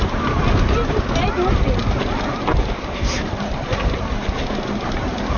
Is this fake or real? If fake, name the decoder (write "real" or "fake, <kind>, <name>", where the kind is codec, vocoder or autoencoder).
real